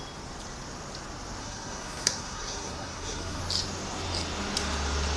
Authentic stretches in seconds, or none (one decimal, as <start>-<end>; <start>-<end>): 0.0-1.4; 3.4-5.2